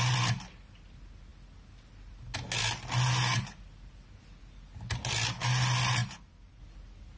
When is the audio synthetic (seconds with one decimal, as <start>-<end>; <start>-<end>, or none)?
6.0-6.6

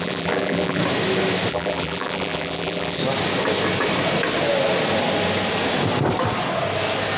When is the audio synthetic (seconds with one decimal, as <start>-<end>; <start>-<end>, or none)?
0.0-0.8; 1.5-3.0

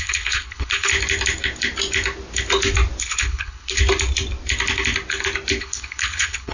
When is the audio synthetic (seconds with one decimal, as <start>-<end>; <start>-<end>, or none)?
0.0-0.9; 3.0-3.8; 5.6-6.5

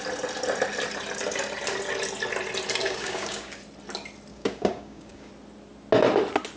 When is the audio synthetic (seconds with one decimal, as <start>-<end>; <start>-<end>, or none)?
2.8-3.6; 4.3-5.3